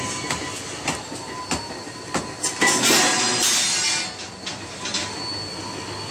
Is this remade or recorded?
recorded